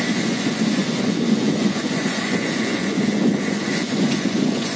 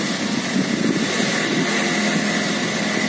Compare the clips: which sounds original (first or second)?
second